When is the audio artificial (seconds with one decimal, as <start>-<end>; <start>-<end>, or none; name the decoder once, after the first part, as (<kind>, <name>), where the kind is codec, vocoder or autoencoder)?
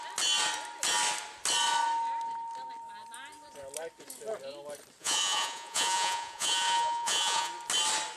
5.0-7.5 (vocoder, Vocos)